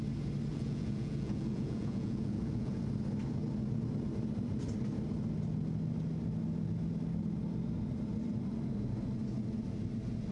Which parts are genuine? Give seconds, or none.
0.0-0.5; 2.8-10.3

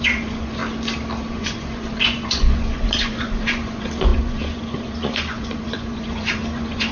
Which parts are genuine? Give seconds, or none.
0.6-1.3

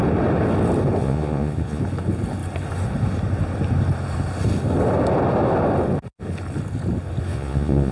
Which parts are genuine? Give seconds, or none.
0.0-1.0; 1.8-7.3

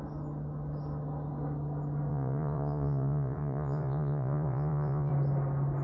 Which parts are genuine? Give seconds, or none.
0.0-2.1; 5.1-5.8